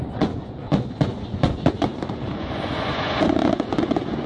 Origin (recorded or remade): remade